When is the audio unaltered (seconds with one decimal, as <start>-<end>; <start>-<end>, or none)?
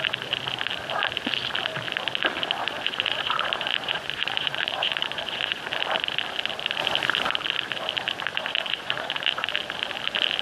0.0-2.6; 5.6-8.3; 9.5-10.4